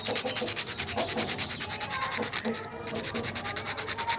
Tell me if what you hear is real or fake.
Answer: fake